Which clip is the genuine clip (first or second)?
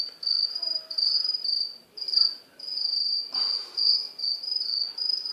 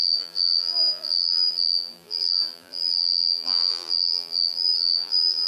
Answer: first